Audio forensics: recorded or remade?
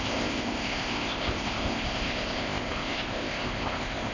remade